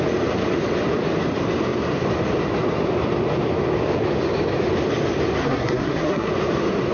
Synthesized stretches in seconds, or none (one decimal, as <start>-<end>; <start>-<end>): 5.4-6.3